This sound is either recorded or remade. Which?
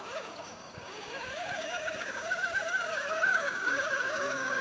remade